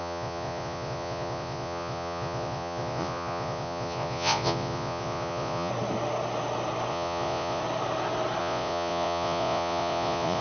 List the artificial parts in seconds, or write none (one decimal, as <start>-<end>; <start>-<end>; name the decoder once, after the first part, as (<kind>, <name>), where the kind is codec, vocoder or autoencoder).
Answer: 0.0-5.7 (vocoder, Vocos); 6.9-7.6; 8.4-10.4